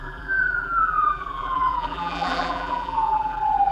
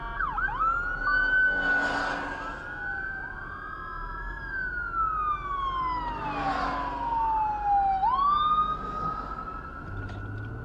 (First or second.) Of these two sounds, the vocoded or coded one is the first